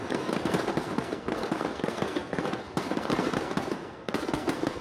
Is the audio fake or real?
fake